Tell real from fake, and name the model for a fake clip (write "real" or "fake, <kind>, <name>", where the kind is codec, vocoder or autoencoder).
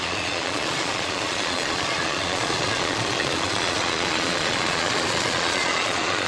fake, vocoder, Vocos